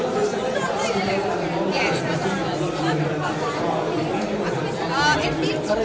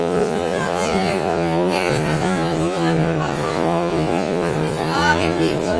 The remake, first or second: second